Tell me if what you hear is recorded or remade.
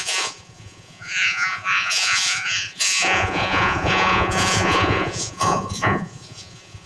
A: remade